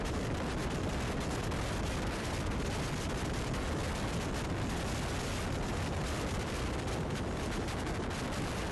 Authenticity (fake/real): real